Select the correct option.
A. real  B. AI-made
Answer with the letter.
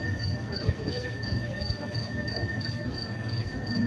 B